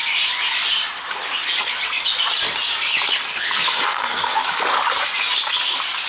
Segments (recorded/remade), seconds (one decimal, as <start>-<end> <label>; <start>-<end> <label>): 0.0-3.3 recorded; 3.3-4.5 remade; 4.5-6.1 recorded